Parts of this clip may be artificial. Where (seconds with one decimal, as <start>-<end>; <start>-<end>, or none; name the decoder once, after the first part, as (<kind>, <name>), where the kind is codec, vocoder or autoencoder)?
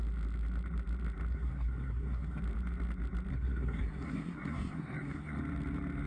1.3-2.4 (codec, SNAC); 3.3-5.4